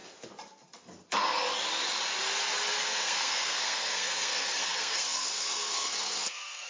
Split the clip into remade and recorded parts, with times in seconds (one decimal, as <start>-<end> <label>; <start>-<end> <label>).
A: 0.0-2.8 recorded; 2.8-6.7 remade